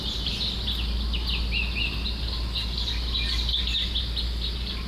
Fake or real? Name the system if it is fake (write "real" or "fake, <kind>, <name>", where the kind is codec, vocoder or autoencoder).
real